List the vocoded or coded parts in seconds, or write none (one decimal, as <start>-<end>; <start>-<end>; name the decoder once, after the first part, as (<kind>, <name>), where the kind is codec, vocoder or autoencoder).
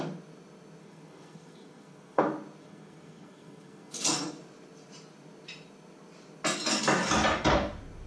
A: 0.8-2.2 (codec, SNAC); 2.6-4.3